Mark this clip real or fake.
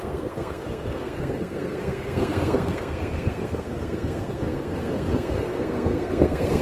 fake